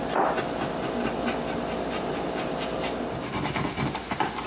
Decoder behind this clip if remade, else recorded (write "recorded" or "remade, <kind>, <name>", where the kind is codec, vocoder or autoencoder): recorded